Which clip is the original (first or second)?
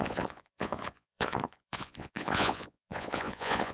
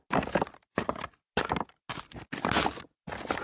second